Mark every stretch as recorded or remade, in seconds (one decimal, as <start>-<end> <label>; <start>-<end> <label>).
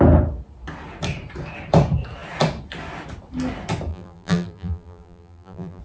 0.0-3.9 recorded; 3.9-5.8 remade